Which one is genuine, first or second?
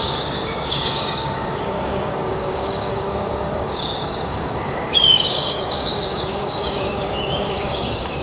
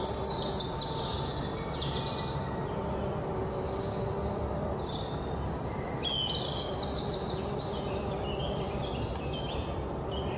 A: second